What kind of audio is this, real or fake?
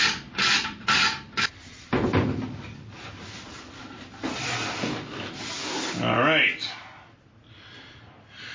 real